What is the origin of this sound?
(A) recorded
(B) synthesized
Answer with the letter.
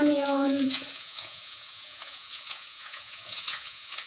B